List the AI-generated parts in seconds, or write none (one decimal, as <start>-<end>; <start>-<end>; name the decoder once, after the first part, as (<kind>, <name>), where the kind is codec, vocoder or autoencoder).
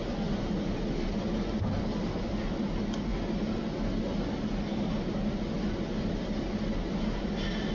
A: none